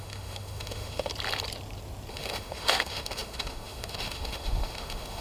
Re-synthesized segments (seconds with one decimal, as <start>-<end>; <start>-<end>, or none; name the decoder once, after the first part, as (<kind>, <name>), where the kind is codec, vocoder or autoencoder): 0.0-1.1 (autoencoder, DAC-VAE); 2.1-5.2